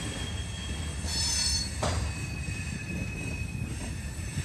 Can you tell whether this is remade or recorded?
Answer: recorded